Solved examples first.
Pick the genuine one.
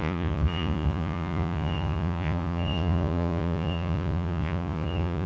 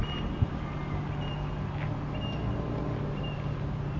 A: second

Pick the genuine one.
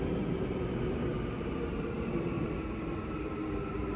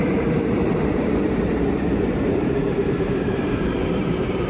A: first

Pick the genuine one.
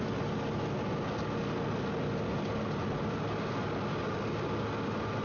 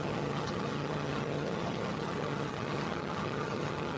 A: first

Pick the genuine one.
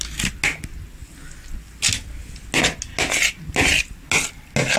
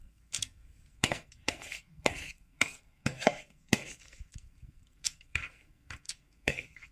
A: first